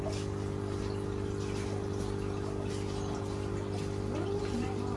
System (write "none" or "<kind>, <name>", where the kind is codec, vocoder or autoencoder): none